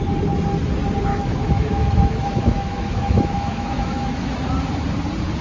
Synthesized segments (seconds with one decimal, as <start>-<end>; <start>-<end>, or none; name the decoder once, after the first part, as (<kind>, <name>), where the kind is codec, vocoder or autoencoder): 1.1-4.3 (autoencoder, DAC-VAE)